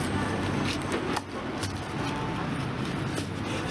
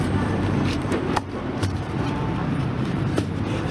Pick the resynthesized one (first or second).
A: second